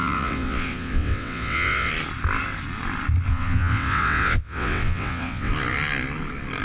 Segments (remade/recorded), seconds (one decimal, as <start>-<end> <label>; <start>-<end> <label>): 0.0-1.9 remade; 1.9-3.3 recorded; 3.3-5.5 remade; 5.5-6.6 recorded